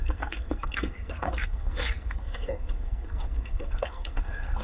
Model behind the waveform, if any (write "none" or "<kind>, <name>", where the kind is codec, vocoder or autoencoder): codec, SNAC